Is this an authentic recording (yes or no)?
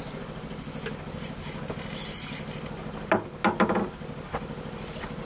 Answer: yes